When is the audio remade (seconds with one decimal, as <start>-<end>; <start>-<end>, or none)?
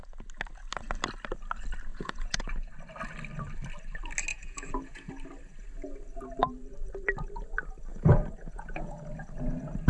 1.9-2.7; 4.3-5.1; 7.9-9.0